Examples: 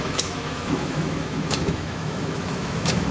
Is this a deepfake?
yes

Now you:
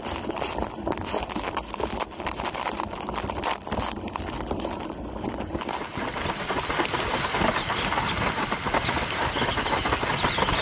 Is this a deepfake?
no